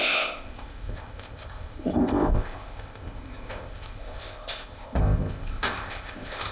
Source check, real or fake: fake